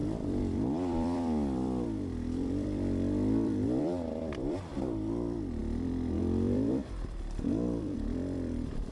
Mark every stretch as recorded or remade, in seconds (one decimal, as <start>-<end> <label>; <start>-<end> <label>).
0.0-8.9 remade